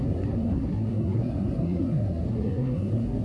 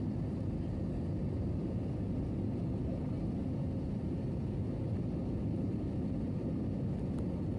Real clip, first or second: second